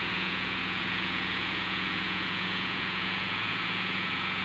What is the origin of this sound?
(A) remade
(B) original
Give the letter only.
A